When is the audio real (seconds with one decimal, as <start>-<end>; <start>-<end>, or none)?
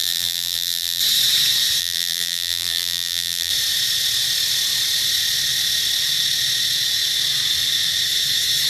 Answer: 1.0-1.8; 3.5-8.7